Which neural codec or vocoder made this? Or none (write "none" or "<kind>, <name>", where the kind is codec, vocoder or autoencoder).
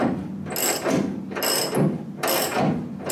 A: none